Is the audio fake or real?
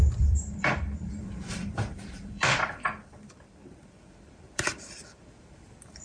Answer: fake